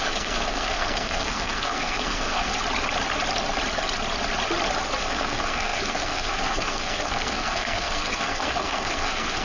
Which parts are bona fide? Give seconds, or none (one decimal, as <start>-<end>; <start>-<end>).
2.5-5.0